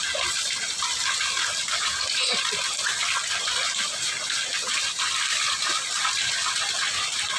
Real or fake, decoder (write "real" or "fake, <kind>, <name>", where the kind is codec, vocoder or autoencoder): real